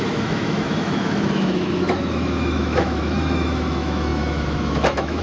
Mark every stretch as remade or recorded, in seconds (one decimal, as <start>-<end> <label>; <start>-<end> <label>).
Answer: 0.0-5.2 remade